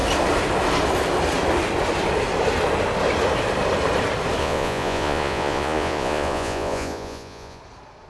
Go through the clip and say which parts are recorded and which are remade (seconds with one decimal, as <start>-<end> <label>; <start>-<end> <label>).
0.0-4.4 recorded; 4.4-7.6 remade; 7.6-8.1 recorded

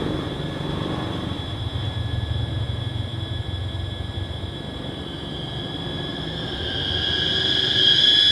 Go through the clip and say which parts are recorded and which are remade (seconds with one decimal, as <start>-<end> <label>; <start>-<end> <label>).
0.0-8.3 recorded

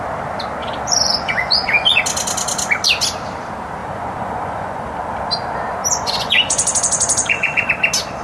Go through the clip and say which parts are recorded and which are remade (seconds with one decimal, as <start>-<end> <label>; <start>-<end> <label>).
0.0-0.6 recorded; 0.6-2.0 remade; 2.0-3.8 recorded; 3.8-4.9 remade; 4.9-5.8 recorded; 5.8-7.7 remade; 7.7-8.2 recorded

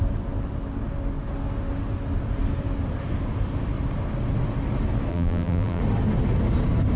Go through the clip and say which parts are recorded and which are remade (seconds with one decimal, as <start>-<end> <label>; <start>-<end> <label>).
0.0-5.1 recorded; 5.1-5.8 remade; 5.8-7.0 recorded

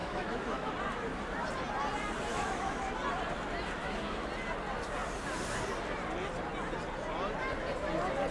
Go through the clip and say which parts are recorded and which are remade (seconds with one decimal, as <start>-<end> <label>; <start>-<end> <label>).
0.0-0.7 remade; 0.7-2.3 recorded; 2.3-2.9 remade; 2.9-3.8 recorded; 3.8-4.3 remade; 4.3-8.3 recorded

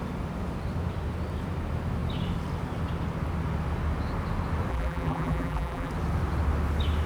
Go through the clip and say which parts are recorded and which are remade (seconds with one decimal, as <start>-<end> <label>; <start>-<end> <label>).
0.0-4.7 recorded; 4.7-5.9 remade; 5.9-7.1 recorded

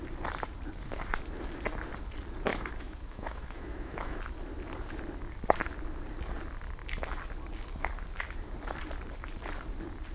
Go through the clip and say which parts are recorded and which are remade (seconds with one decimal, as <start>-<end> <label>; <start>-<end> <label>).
0.0-2.5 recorded; 2.5-4.2 remade; 4.2-10.1 recorded